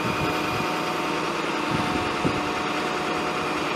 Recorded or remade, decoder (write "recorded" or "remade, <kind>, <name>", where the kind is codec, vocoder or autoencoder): remade, vocoder, BigVGAN v2